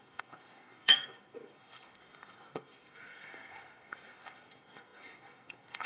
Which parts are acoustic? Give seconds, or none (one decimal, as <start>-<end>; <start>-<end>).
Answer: none